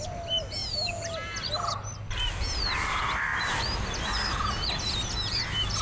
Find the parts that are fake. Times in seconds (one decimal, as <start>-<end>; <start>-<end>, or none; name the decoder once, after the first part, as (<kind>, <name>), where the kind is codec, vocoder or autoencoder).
none